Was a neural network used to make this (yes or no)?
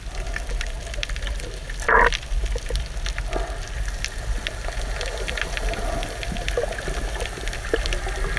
no